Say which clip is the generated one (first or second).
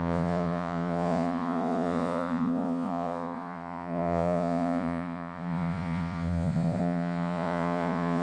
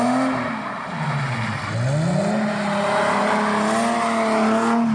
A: first